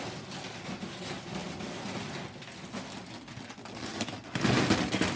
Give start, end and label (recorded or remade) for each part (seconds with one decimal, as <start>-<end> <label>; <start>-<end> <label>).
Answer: 0.0-5.2 recorded